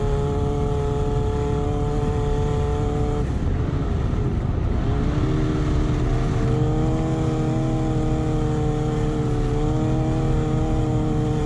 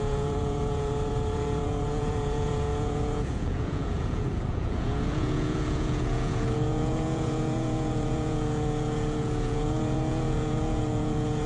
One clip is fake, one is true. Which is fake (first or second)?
second